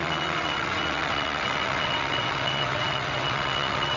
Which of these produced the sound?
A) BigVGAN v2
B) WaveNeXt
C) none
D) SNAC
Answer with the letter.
B